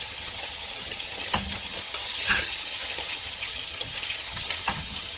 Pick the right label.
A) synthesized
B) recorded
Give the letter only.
A